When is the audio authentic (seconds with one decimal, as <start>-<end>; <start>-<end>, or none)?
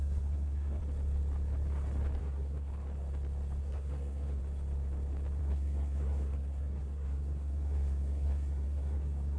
0.8-2.2; 2.7-3.6; 4.4-5.4